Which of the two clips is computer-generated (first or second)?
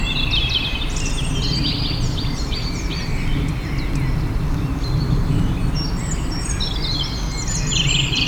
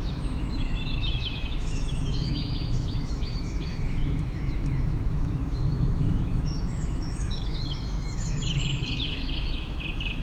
second